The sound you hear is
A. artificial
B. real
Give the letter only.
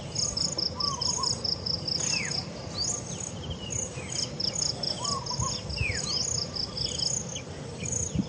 B